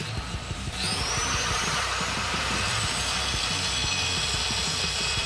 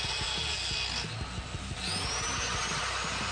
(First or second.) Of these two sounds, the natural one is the second